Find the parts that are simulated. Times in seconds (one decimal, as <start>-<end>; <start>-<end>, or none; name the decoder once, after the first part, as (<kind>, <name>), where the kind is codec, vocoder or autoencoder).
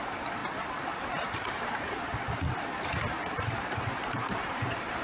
0.0-0.4 (vocoder, BigVGAN v2); 1.0-2.0; 3.3-5.0